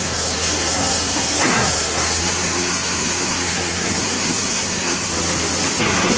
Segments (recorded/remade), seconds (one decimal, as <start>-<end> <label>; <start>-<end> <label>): 0.0-5.1 remade; 5.1-5.8 recorded; 5.8-6.2 remade